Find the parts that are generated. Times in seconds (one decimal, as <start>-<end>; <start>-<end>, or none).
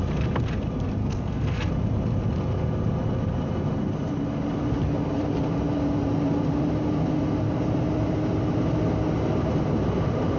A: 1.0-1.7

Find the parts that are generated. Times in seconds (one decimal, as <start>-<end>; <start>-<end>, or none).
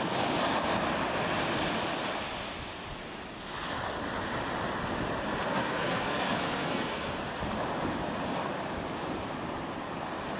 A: 5.5-7.2